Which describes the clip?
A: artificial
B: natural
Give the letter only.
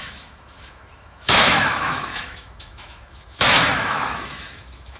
A